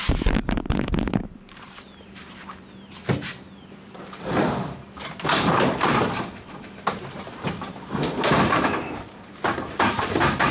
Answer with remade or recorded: remade